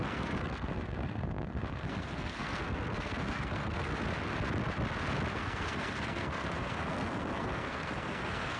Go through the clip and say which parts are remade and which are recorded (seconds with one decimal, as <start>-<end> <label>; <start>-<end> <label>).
0.0-3.9 remade; 3.9-5.3 recorded; 5.3-8.6 remade